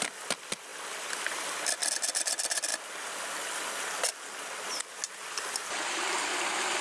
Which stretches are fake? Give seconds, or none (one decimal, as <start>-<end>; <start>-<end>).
none